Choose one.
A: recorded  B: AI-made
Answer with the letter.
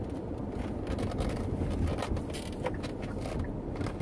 A